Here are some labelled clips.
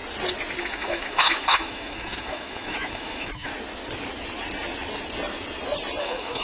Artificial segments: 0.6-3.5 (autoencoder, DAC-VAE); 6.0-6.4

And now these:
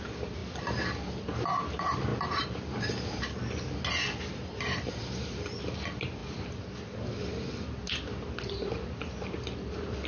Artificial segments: none

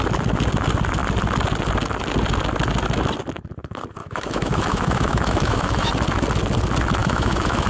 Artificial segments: 4.0-5.9 (autoencoder, DAC-VAE); 7.0-7.7

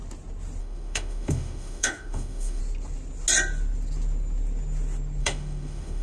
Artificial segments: 0.6-2.6 (autoencoder, DAC-VAE); 5.2-6.0